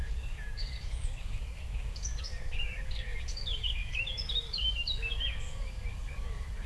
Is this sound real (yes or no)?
no